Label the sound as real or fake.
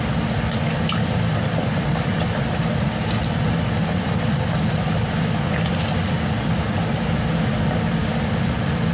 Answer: fake